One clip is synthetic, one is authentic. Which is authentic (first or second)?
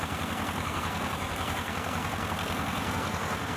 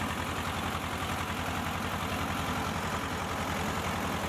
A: second